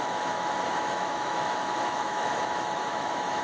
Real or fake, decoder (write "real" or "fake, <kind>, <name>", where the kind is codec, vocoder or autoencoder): fake, autoencoder, DAC-VAE